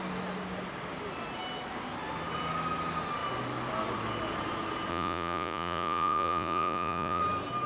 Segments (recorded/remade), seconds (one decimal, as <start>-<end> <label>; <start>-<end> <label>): 0.0-4.9 recorded; 4.9-7.2 remade; 7.2-7.7 recorded